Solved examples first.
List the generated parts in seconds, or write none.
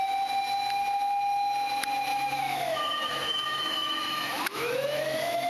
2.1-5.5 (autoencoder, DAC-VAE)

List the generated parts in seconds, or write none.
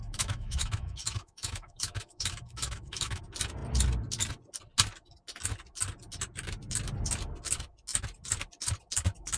0.0-3.2 (autoencoder, DAC-VAE)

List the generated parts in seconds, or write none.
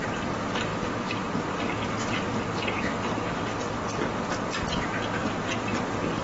none